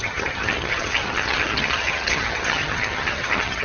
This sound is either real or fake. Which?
fake